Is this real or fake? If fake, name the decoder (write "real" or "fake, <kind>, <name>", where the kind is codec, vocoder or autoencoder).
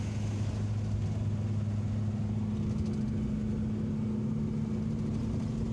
real